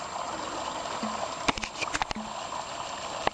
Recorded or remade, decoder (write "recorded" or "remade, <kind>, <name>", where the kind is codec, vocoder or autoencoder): recorded